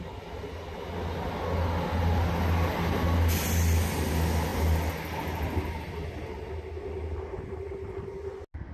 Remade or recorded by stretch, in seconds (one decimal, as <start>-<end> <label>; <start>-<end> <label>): 0.0-8.7 recorded